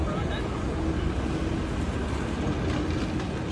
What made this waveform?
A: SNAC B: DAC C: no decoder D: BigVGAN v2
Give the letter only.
C